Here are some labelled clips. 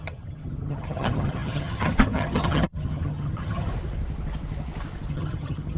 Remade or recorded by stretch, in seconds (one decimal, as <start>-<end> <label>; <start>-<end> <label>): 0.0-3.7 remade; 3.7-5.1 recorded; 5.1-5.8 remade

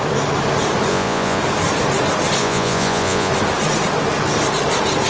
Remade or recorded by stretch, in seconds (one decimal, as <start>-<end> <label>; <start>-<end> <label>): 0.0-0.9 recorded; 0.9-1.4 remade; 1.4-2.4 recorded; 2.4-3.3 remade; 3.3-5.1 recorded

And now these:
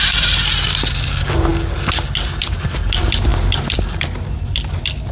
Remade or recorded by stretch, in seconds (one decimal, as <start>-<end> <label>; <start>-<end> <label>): 0.0-0.5 remade; 0.5-1.1 recorded; 1.1-1.5 remade; 1.5-2.4 recorded; 2.4-5.1 remade

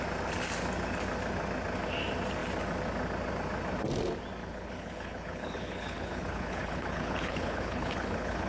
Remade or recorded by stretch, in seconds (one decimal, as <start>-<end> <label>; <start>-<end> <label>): 0.0-4.4 recorded; 4.4-8.5 remade

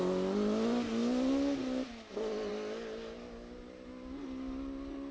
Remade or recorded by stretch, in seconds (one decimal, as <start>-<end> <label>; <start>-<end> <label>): 0.0-5.1 recorded

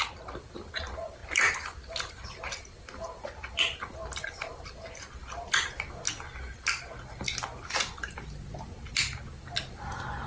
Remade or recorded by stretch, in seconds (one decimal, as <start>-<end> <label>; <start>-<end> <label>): 0.0-10.3 recorded

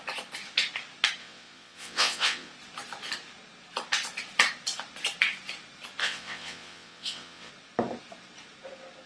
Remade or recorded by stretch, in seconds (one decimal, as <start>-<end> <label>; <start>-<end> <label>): 0.0-1.2 recorded; 1.2-2.5 remade; 2.5-6.0 recorded; 6.0-7.5 remade; 7.5-9.1 recorded

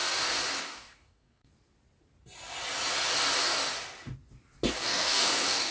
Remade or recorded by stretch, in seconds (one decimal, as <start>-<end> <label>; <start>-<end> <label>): 0.0-0.6 recorded; 0.6-1.5 remade; 1.5-4.7 recorded; 4.7-5.7 remade